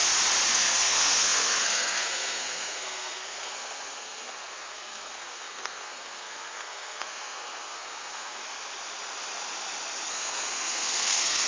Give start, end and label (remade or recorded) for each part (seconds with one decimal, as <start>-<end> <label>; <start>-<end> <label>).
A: 0.0-0.5 recorded; 0.5-8.4 remade; 8.4-10.1 recorded; 10.1-11.5 remade